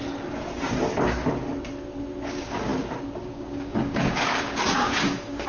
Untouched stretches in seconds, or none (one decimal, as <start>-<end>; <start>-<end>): 0.0-2.3; 2.7-3.2